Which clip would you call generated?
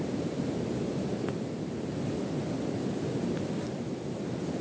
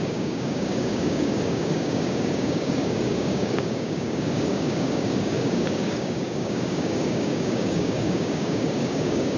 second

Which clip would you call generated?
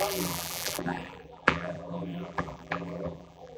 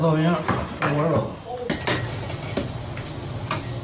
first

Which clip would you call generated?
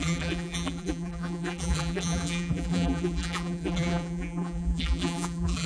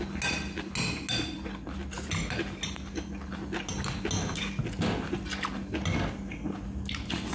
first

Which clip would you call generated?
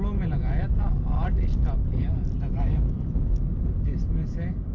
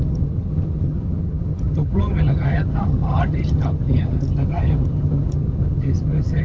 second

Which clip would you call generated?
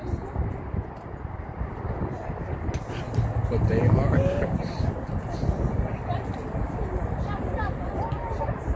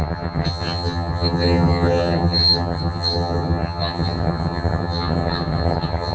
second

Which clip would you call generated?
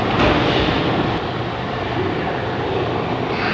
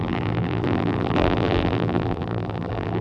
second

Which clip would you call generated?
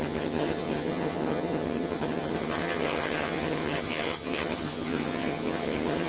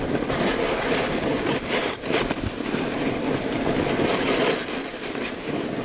first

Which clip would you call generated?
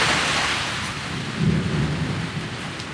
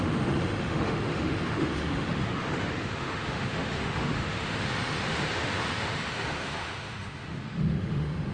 second